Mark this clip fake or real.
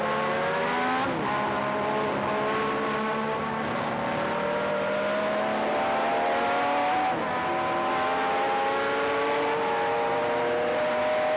real